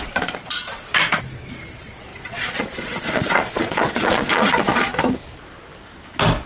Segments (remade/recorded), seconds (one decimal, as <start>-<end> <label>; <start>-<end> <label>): 0.0-0.9 remade; 0.9-1.7 recorded; 1.7-4.9 remade; 4.9-6.5 recorded